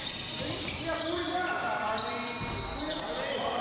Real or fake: real